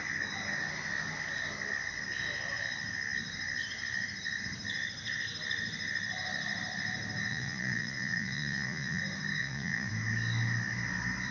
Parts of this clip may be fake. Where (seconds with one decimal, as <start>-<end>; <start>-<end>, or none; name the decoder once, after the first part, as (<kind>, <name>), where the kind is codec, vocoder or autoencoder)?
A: 7.3-9.0 (vocoder, Vocos); 9.4-9.9